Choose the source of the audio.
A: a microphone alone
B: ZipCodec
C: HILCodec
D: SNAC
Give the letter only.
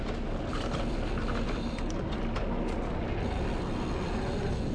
A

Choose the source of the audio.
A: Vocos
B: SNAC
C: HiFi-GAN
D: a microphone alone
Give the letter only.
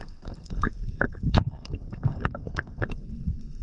B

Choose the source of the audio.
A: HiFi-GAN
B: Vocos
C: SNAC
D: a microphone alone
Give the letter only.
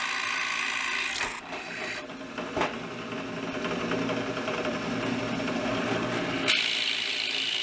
D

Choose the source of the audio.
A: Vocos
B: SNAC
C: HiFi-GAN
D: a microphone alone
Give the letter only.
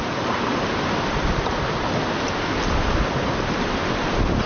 D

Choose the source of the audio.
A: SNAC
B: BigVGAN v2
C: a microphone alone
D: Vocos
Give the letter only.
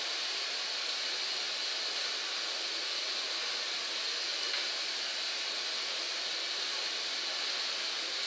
C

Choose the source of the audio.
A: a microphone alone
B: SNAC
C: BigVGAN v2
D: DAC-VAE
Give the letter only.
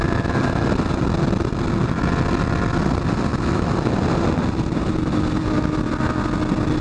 A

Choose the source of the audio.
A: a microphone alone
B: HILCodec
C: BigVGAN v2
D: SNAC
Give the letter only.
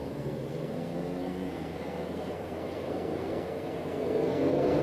D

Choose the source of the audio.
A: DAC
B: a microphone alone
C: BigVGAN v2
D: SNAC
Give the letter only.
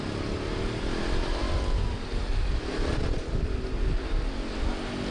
B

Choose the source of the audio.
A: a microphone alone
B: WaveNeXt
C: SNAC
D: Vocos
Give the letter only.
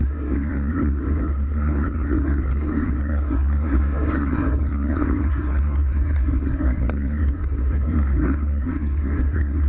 C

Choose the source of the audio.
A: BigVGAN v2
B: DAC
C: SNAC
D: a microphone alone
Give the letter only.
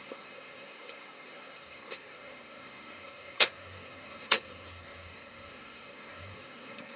C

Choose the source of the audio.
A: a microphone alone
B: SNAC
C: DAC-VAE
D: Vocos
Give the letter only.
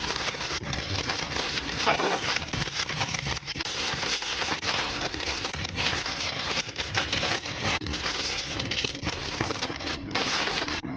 B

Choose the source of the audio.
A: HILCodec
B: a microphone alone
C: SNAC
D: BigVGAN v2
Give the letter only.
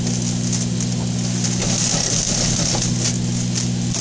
B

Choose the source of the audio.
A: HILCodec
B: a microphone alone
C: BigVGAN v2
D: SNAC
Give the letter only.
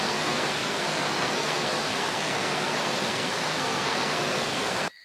D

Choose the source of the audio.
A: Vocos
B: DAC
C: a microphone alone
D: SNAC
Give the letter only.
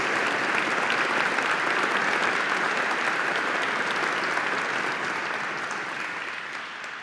C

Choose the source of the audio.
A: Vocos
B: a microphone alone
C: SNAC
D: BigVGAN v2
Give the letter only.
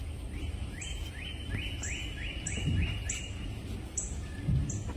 B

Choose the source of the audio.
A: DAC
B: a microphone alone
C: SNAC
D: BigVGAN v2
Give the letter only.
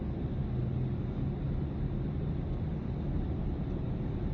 B